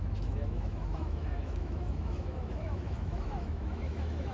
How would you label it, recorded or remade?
remade